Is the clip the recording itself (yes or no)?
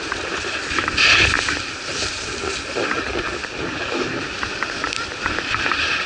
yes